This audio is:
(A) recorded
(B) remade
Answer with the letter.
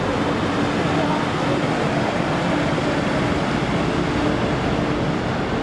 A